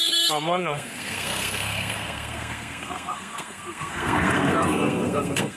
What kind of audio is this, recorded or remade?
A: remade